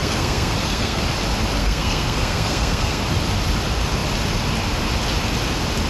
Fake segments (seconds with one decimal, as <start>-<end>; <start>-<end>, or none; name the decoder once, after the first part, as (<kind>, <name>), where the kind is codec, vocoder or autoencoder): 0.0-1.0 (codec, SNAC); 1.6-3.0